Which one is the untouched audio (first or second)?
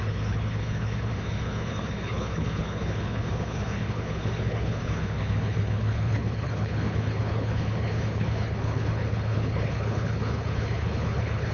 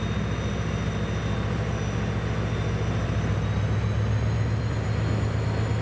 second